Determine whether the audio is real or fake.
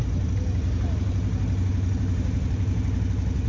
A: real